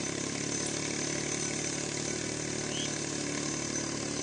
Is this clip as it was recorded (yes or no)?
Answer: yes